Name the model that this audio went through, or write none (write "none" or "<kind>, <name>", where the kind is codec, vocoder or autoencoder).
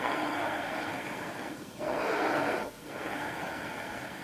codec, SNAC